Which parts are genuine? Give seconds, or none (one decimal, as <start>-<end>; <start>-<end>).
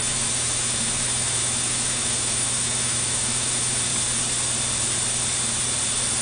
3.9-6.2